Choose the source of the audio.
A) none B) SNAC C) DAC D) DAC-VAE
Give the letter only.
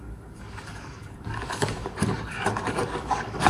C